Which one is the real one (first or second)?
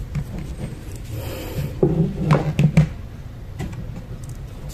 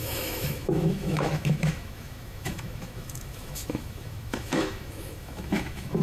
first